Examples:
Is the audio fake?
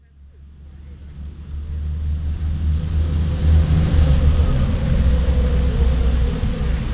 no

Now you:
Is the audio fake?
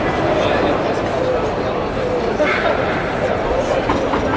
no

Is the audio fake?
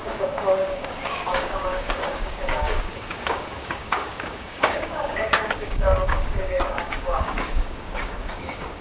yes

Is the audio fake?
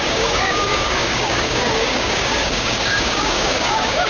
yes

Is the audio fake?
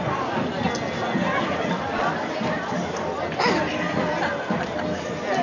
no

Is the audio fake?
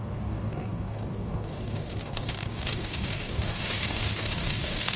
yes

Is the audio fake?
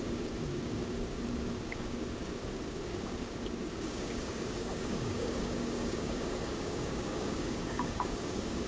yes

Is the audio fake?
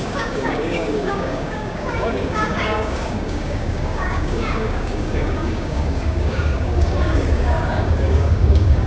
yes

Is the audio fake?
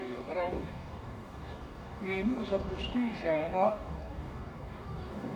yes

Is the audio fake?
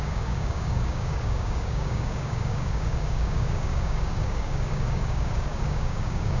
yes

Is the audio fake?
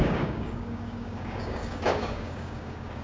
yes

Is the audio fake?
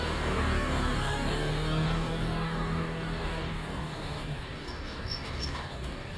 yes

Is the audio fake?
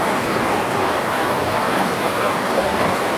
yes